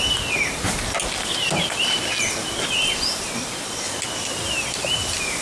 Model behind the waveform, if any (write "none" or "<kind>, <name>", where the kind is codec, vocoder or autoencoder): none